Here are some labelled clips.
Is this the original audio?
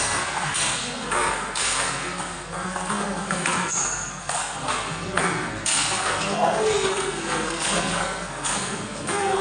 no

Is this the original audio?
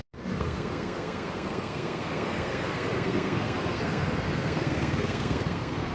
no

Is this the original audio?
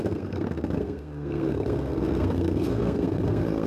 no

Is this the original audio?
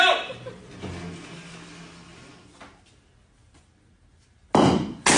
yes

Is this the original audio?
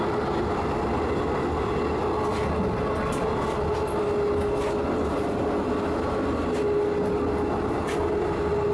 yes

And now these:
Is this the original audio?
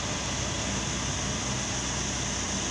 yes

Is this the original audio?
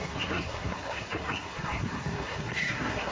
no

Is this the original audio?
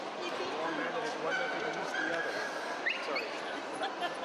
yes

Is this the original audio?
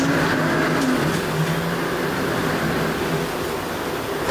yes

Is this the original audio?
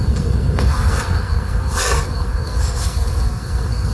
no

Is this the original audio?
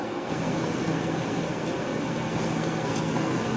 no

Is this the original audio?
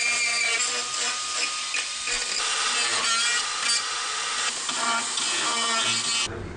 yes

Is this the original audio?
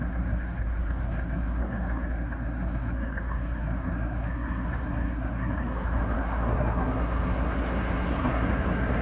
no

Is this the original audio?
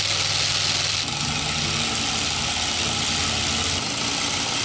yes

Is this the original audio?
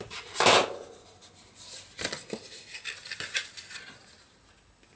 yes